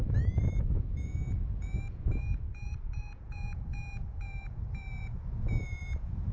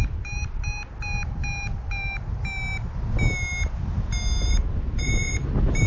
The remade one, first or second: first